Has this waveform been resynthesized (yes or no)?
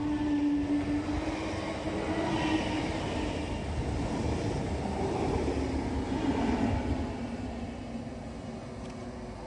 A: no